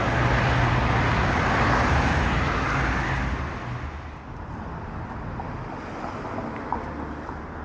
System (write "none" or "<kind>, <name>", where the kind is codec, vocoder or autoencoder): none